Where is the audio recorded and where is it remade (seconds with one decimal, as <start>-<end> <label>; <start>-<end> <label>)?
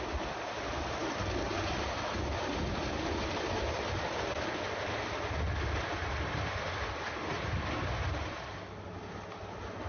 0.0-9.9 recorded